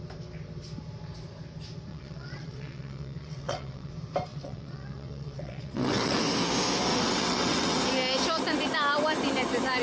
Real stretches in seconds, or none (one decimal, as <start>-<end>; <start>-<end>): 0.0-1.9; 3.9-4.3; 6.2-6.9; 7.8-9.8